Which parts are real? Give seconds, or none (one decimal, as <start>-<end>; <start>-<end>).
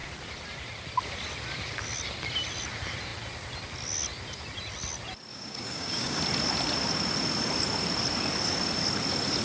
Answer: 0.0-5.3; 6.2-9.4